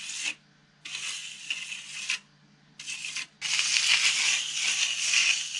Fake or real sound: real